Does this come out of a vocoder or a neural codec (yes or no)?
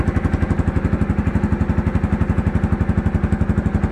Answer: no